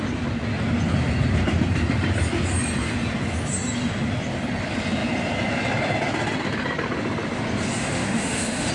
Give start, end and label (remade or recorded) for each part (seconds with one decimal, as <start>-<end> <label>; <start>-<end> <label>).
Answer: 0.0-7.8 recorded; 7.8-8.7 remade